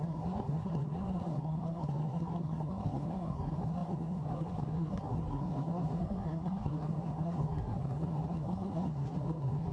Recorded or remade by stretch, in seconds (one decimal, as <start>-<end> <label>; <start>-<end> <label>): 0.0-9.7 remade